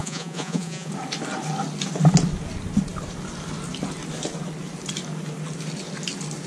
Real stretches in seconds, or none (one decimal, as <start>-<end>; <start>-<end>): 0.9-6.5